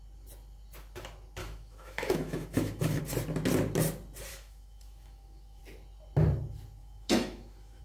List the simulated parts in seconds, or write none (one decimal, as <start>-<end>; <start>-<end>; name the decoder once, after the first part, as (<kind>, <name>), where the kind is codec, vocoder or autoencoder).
1.4-3.0 (autoencoder, DAC-VAE); 4.3-5.6; 6.8-7.8